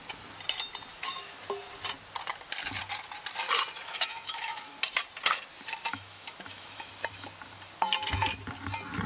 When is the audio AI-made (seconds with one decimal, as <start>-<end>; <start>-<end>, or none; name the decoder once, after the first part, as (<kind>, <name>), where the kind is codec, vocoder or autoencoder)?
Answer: 0.9-1.4 (autoencoder, DAC-VAE); 3.8-4.7; 5.9-6.9